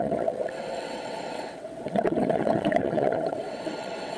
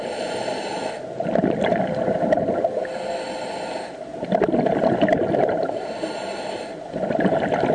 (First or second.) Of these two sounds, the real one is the second